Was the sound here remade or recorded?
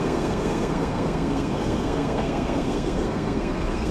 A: remade